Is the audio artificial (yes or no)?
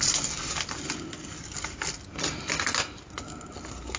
no